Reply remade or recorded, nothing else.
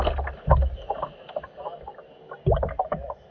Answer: recorded